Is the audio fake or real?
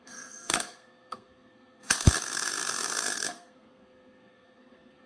fake